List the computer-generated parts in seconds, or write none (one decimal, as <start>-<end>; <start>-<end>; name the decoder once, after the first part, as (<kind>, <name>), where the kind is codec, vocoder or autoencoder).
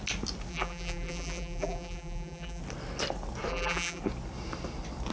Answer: 0.5-2.6 (vocoder, BigVGAN v2); 3.5-4.0